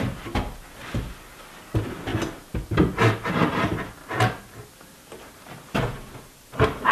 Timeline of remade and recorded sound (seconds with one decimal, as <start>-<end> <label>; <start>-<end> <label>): 0.0-6.9 recorded